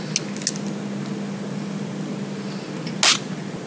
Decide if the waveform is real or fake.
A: real